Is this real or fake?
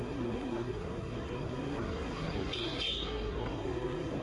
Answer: fake